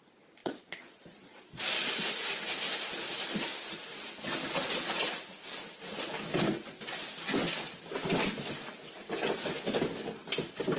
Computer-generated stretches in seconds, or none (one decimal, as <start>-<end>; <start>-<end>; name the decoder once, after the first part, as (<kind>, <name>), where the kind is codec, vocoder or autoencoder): 0.4-1.9 (vocoder, Vocos)